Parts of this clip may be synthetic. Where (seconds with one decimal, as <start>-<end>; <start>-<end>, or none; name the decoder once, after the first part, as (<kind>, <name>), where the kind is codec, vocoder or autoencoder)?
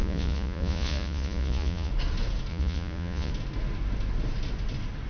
0.0-1.9 (vocoder, Vocos); 2.5-3.3